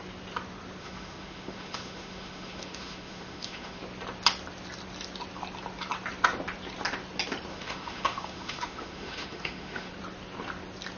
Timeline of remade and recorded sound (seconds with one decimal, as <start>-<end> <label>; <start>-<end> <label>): 0.0-0.8 recorded; 0.8-3.8 remade; 3.8-7.5 recorded; 7.5-9.9 remade; 9.9-11.0 recorded

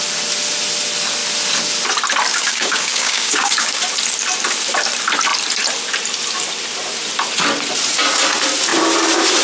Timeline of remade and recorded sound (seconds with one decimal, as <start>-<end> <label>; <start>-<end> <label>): 0.0-2.3 recorded; 2.3-3.8 remade; 3.8-9.4 recorded

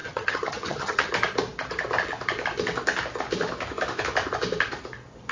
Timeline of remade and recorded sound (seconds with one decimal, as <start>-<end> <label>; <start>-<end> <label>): 0.0-1.1 remade; 1.1-5.3 recorded

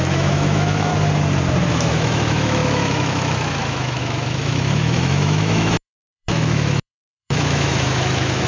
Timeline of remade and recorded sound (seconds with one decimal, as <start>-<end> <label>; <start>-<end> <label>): 0.0-0.9 remade; 0.9-1.7 recorded; 1.7-8.5 remade

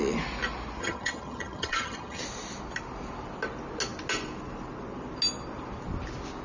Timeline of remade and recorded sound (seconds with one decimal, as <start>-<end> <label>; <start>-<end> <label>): 0.0-0.8 recorded; 0.8-2.2 remade; 2.2-6.4 recorded

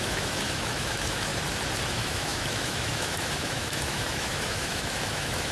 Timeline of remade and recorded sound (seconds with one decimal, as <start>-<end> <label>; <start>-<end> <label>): 0.0-1.3 remade; 1.3-1.9 recorded; 1.9-5.5 remade

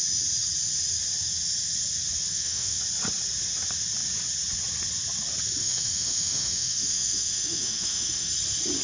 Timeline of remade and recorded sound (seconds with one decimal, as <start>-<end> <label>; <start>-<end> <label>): 0.0-2.3 recorded; 2.3-2.8 remade; 2.8-5.6 recorded; 5.6-8.3 remade; 8.3-8.8 recorded